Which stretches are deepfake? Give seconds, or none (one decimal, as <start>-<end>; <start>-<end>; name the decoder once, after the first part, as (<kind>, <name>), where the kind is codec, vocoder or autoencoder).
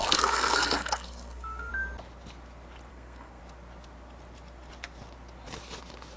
0.0-1.7 (codec, SNAC); 2.9-3.4